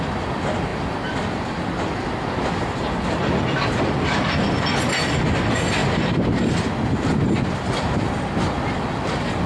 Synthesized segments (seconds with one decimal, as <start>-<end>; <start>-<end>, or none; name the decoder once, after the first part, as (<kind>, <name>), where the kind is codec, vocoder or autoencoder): none